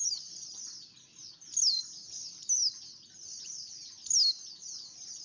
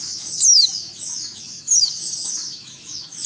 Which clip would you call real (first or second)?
first